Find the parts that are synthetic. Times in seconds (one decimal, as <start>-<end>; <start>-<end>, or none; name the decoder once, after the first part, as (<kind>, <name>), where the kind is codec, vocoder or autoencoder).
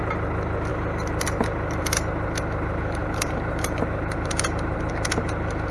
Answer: 3.0-4.9 (vocoder, BigVGAN v2)